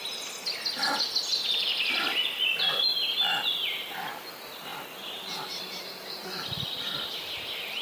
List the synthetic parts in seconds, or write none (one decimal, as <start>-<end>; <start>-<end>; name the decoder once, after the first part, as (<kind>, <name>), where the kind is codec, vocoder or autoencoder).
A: none